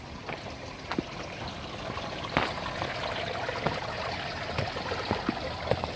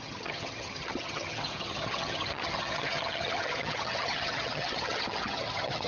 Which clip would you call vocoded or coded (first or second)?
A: second